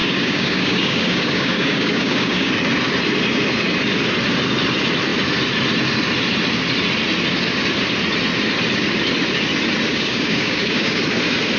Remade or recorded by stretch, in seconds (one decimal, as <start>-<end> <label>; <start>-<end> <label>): 0.0-2.5 remade; 2.5-9.9 recorded; 9.9-11.0 remade; 11.0-11.6 recorded